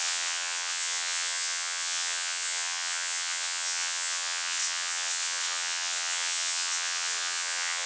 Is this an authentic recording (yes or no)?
no